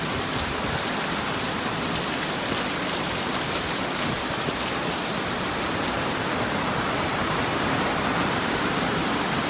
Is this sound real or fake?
fake